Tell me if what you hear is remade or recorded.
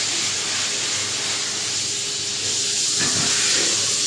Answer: recorded